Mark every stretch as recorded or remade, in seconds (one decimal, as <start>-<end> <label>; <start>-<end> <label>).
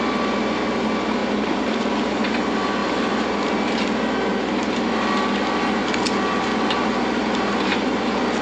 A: 0.0-1.2 recorded; 1.2-2.2 remade; 2.2-8.4 recorded